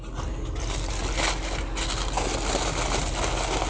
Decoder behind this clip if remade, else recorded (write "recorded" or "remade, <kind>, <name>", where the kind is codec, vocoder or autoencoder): recorded